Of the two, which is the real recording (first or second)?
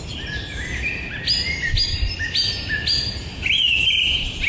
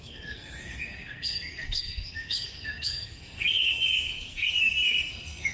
first